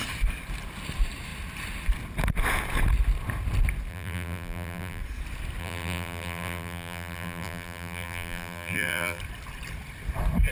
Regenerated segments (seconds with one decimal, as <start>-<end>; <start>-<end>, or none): 3.9-5.0; 5.6-9.2